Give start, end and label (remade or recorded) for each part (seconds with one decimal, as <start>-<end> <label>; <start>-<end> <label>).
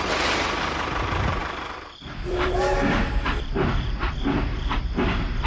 0.0-5.5 remade